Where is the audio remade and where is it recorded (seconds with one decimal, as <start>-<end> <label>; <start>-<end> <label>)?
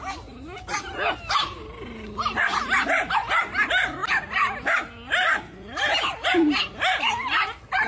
0.0-7.9 recorded